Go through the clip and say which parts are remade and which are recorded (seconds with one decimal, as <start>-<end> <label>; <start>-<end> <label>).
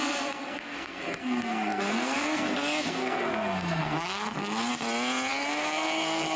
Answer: 0.0-4.7 remade; 4.7-5.3 recorded; 5.3-6.4 remade